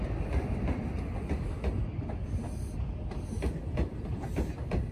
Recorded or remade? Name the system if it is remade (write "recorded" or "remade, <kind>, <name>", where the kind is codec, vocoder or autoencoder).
recorded